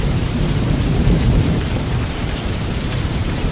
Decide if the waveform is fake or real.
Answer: fake